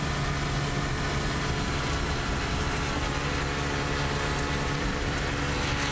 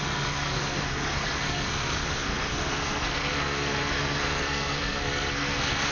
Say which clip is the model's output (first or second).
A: second